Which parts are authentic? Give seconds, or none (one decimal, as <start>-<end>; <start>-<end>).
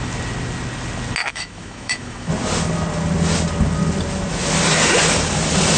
0.0-1.2; 2.3-5.8